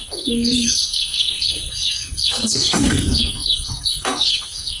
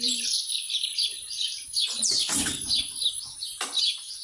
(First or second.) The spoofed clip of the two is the first